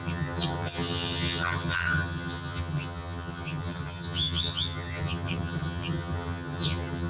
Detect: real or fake fake